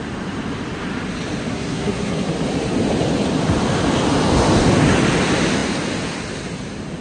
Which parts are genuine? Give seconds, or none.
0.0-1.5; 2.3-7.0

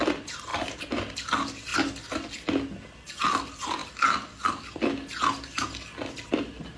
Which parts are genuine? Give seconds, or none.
0.0-6.8

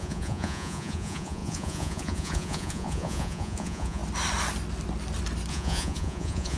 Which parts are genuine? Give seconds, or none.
4.0-5.5

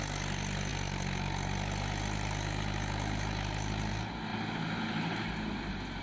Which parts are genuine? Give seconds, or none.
0.0-6.0

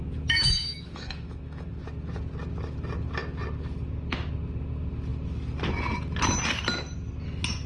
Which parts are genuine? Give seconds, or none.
1.7-7.7